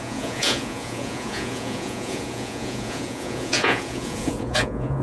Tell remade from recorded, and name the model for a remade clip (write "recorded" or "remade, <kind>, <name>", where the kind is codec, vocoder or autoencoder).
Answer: remade, vocoder, Vocos